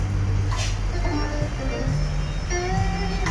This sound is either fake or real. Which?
real